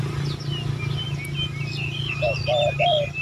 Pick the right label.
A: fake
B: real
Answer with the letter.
B